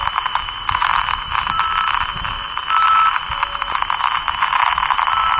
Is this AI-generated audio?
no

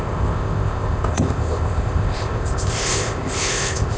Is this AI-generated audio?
yes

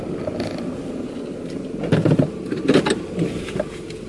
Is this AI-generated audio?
no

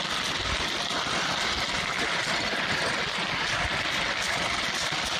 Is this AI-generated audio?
no